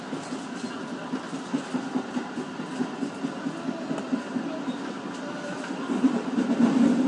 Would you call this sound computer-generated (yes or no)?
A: no